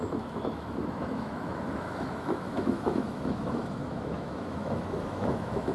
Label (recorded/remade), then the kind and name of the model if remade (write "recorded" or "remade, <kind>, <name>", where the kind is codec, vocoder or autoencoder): remade, autoencoder, DAC-VAE